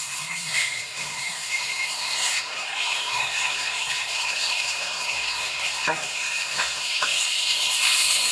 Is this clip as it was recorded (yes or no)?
no